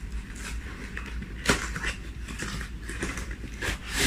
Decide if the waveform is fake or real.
real